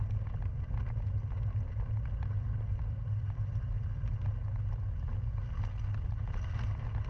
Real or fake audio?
real